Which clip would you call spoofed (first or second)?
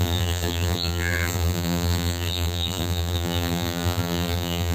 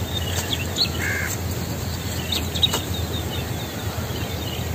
first